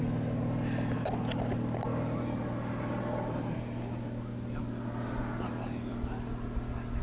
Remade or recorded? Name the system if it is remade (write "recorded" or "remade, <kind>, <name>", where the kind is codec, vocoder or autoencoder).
recorded